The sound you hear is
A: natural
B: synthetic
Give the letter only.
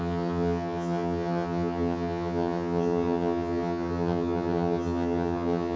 B